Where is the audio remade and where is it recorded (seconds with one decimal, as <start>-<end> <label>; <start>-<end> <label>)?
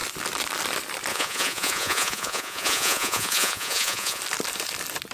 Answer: 0.0-1.1 recorded; 1.1-4.2 remade; 4.2-5.1 recorded